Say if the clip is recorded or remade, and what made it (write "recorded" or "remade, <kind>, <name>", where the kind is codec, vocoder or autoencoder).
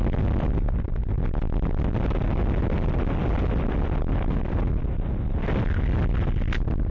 recorded